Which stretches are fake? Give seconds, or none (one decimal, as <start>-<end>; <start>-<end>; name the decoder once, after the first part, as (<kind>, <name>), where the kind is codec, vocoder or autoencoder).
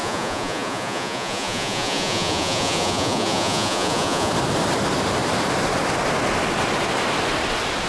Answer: 0.0-4.3 (vocoder, Vocos)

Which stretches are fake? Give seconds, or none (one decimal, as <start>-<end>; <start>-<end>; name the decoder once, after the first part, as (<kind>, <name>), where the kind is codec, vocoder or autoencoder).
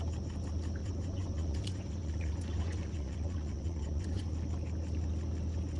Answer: 0.8-4.3 (vocoder, Vocos)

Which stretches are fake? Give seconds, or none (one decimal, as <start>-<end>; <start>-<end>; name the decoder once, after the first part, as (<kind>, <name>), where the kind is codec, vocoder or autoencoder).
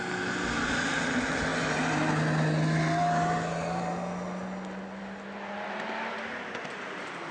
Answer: none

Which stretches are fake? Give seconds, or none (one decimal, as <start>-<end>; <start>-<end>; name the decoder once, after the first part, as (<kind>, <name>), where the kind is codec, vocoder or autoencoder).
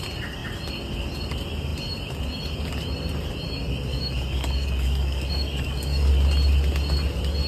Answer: 3.9-6.1 (codec, DAC)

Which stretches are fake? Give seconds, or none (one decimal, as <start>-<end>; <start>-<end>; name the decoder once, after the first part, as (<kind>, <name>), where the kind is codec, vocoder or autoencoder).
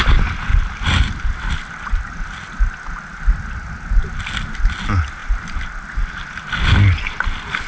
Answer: 0.5-3.3 (vocoder, BigVGAN v2); 5.2-6.1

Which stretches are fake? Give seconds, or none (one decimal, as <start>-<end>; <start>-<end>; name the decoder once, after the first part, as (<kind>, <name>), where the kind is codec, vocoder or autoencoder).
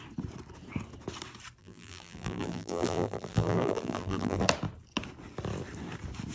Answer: 1.6-4.4 (vocoder, BigVGAN v2)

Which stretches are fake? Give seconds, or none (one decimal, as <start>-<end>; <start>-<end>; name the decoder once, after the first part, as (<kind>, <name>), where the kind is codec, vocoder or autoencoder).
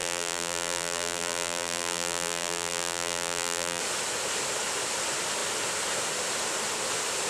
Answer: 0.0-3.8 (vocoder, BigVGAN v2)